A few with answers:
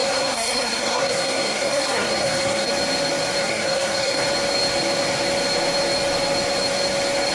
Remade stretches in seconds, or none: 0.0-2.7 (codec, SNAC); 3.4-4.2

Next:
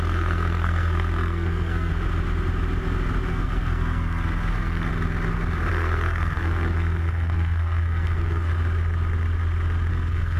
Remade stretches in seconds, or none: 0.0-1.9 (codec, SNAC); 3.3-4.9; 5.7-8.5; 9.9-10.4

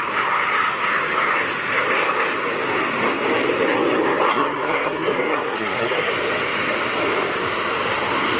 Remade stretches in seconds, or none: 4.3-6.1 (codec, SNAC)